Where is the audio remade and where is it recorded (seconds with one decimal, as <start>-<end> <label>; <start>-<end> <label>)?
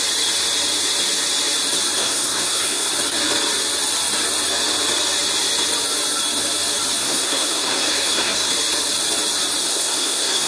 0.0-2.0 recorded; 2.0-2.9 remade; 2.9-7.0 recorded; 7.0-8.5 remade; 8.5-9.6 recorded; 9.6-10.5 remade